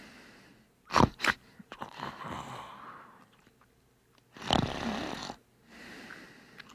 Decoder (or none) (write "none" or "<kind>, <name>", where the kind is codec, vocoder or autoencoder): none